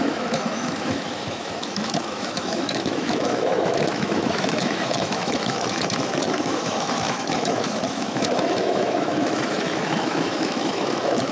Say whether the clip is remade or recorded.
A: remade